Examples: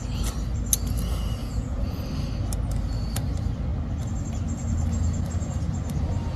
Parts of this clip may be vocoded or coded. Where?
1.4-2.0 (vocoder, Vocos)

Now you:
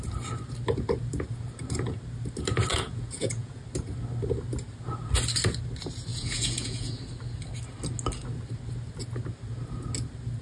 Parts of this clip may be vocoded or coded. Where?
2.7-3.6 (vocoder, Vocos); 6.1-7.0

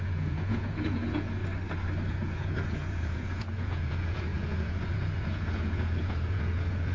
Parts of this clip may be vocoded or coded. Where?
0.0-1.4 (vocoder, Vocos); 2.1-6.9

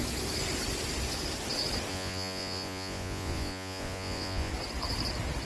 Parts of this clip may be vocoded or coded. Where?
1.9-4.5 (vocoder, Vocos)